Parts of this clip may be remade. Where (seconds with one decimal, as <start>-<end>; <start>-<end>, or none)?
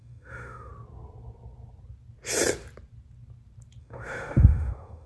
0.0-0.7; 3.8-5.1